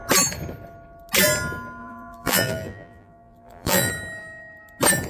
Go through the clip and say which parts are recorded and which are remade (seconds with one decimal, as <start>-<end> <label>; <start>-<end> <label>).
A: 0.0-1.8 recorded; 1.8-3.9 remade; 3.9-5.1 recorded